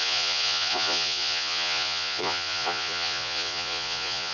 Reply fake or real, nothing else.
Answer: fake